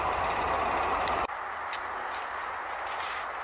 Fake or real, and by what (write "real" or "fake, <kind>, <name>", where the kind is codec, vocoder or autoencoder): real